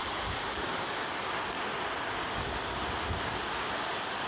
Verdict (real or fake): real